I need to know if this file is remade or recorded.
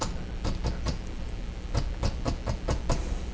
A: recorded